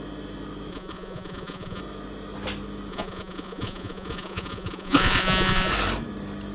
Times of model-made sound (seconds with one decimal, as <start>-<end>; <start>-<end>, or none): 0.7-1.8; 2.9-5.7